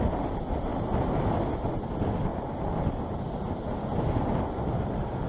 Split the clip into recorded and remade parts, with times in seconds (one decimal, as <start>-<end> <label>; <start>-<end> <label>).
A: 0.0-5.3 recorded